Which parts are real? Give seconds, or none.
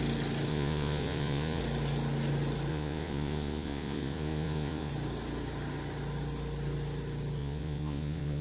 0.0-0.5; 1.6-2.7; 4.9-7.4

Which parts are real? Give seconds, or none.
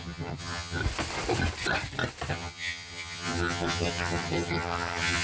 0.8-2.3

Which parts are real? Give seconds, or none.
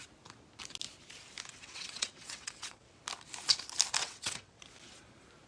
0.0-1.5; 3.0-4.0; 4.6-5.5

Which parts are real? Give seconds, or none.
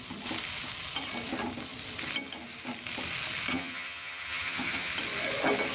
0.0-3.5; 4.9-5.7